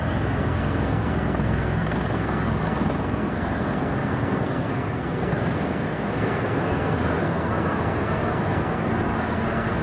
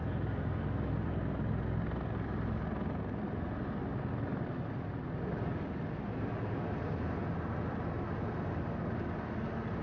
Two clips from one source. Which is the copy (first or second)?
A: first